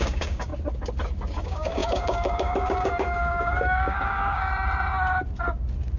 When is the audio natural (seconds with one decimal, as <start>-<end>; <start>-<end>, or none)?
0.5-1.3; 4.5-6.0